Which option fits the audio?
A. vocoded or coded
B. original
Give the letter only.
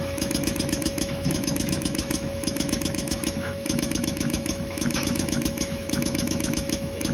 A